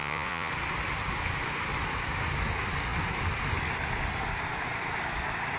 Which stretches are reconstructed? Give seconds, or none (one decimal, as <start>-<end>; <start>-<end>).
0.0-0.5